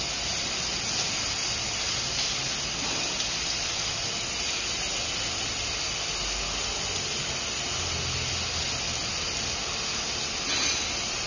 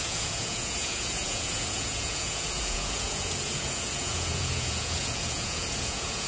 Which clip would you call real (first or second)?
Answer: first